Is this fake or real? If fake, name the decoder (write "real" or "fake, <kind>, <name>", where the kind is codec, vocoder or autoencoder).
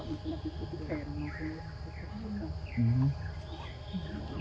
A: real